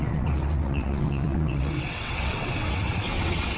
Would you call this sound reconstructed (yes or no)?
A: yes